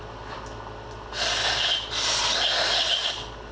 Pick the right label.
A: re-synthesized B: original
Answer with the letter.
B